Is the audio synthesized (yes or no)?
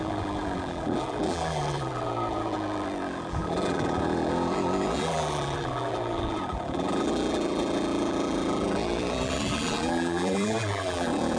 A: yes